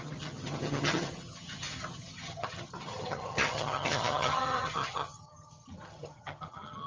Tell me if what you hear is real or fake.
fake